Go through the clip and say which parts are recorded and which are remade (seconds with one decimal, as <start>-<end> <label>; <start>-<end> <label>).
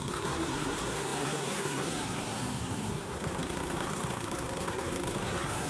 0.0-5.7 remade